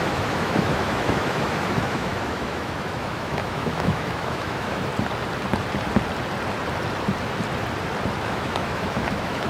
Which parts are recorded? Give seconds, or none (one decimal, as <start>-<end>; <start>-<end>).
4.9-8.3